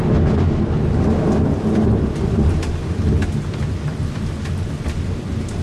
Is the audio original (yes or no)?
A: yes